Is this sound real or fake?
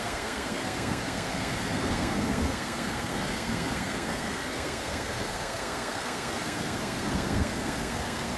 fake